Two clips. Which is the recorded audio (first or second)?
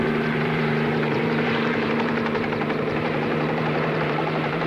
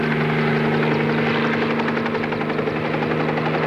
second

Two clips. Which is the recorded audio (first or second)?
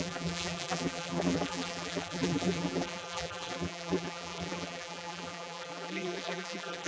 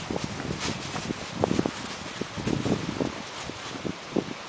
second